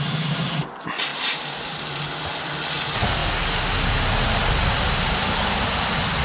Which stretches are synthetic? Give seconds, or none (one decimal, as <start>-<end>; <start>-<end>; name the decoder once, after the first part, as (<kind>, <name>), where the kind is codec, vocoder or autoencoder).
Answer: none